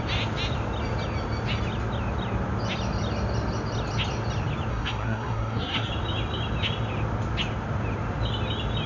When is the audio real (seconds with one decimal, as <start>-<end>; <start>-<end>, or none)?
0.0-4.7; 5.9-8.9